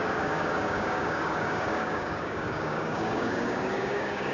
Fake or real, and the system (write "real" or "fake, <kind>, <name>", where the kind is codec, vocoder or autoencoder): fake, codec, DAC